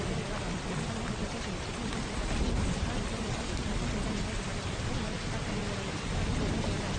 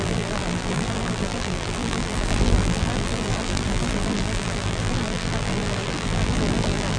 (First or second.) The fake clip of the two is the second